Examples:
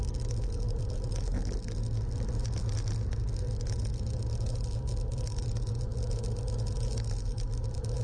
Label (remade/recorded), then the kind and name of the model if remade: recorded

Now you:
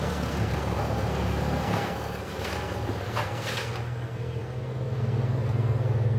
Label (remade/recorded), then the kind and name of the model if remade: remade, codec, SNAC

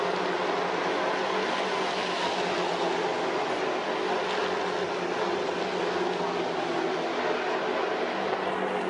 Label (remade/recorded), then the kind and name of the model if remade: recorded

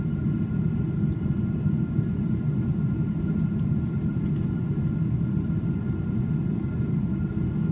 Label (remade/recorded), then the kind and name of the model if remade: recorded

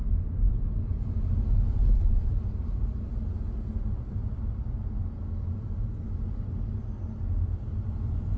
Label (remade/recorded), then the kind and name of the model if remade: recorded